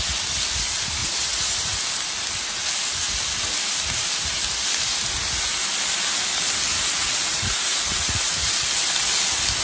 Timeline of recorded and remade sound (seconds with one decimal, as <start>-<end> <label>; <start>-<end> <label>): 0.0-1.0 recorded; 1.0-1.8 remade; 1.8-6.7 recorded; 6.7-8.5 remade; 8.5-9.6 recorded